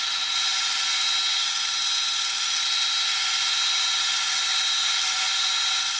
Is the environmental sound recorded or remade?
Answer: recorded